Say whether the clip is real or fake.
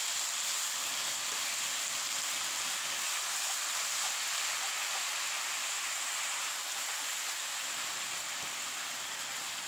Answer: real